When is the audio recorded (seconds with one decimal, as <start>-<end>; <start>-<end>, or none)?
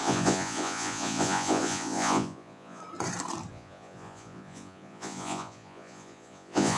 2.8-3.5